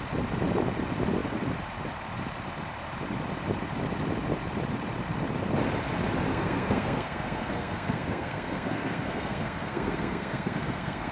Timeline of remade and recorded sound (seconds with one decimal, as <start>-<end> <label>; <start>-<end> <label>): 0.0-6.3 recorded; 6.3-11.1 remade